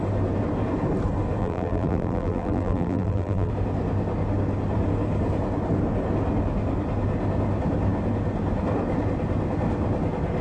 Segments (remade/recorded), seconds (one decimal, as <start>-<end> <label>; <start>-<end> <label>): 0.0-1.4 recorded; 1.4-3.5 remade; 3.5-10.4 recorded